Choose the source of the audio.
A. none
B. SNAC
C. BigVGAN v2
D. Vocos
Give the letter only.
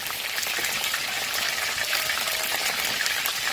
A